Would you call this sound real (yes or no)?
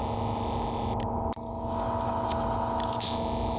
yes